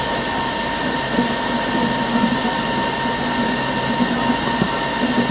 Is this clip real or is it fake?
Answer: real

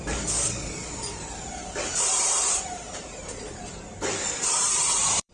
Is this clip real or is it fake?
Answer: fake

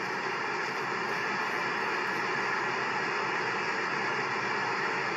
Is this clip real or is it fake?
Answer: real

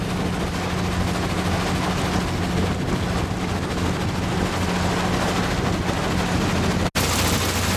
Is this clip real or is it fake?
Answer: real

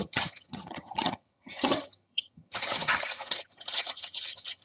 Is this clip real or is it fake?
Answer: fake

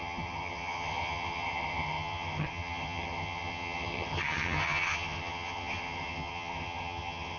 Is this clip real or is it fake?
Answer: fake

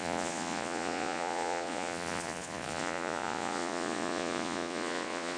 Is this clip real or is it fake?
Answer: fake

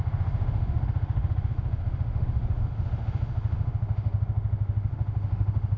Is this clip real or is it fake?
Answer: fake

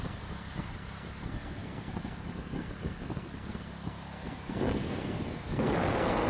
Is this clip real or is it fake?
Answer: fake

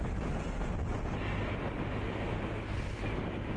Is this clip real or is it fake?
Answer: real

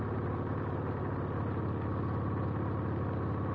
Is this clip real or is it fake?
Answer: real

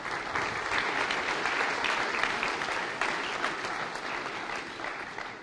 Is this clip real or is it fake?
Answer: real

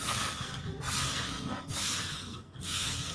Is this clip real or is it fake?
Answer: fake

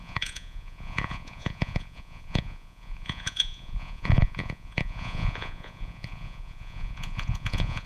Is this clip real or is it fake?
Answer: fake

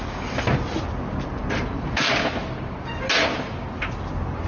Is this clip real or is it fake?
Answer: real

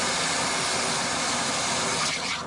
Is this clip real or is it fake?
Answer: real